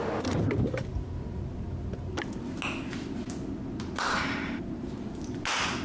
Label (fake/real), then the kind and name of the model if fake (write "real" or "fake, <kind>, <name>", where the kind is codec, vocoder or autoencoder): real